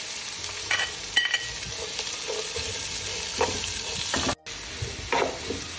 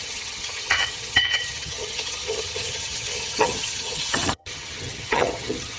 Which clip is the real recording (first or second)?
first